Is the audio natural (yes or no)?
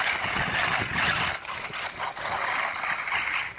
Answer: yes